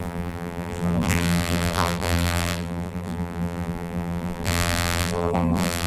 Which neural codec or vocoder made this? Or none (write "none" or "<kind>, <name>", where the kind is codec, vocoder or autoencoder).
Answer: vocoder, BigVGAN v2